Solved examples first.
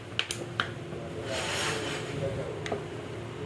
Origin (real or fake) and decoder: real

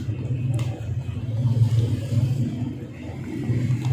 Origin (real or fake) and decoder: real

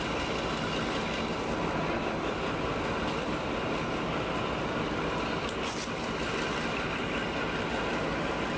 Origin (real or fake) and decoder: real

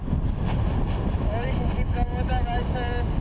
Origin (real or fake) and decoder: real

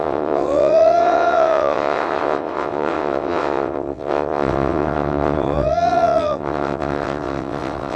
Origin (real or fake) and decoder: fake, vocoder, WaveNeXt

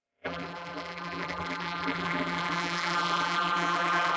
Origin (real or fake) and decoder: fake, vocoder, BigVGAN v2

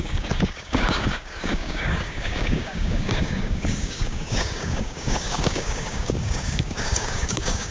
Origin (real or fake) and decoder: fake, codec, DAC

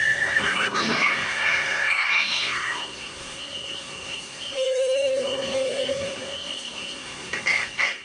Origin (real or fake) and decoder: fake, codec, SNAC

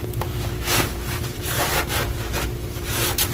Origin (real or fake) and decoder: fake, vocoder, BigVGAN v2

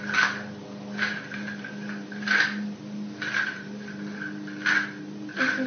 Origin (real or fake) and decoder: real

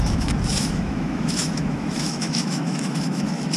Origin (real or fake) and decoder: fake, autoencoder, DAC-VAE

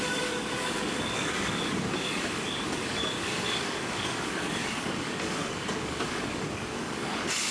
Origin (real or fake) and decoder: fake, codec, DAC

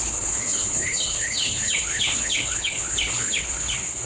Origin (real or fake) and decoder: fake, codec, HILCodec